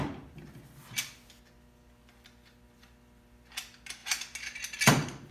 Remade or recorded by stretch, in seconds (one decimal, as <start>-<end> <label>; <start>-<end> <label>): 0.0-5.3 recorded

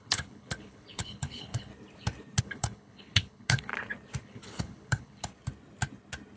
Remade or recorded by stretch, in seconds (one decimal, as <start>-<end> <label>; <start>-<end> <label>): 0.0-1.7 remade; 1.7-2.4 recorded; 2.4-3.7 remade; 3.7-4.2 recorded; 4.2-5.3 remade; 5.3-6.4 recorded

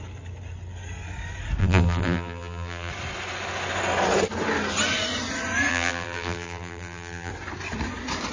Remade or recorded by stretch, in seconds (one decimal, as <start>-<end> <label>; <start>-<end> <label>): 0.0-1.6 recorded; 1.6-2.9 remade; 2.9-5.7 recorded; 5.7-7.3 remade; 7.3-8.3 recorded

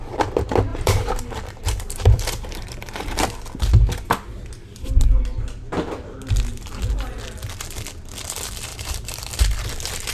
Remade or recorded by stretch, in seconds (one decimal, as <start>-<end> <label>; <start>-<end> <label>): 0.0-0.7 recorded; 0.7-3.2 remade; 3.2-8.7 recorded; 8.7-9.3 remade; 9.3-10.1 recorded

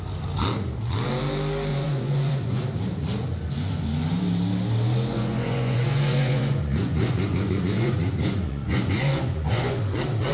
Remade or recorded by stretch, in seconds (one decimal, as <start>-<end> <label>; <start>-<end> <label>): 0.0-1.7 recorded; 1.7-2.6 remade; 2.6-5.1 recorded; 5.1-9.8 remade; 9.8-10.3 recorded